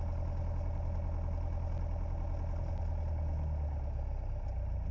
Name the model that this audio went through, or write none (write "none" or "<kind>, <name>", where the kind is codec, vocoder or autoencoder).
none